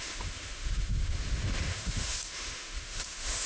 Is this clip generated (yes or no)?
yes